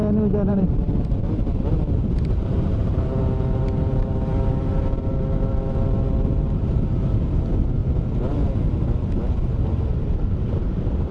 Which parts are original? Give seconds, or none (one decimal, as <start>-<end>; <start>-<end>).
0.0-0.5; 5.1-6.2; 7.8-9.9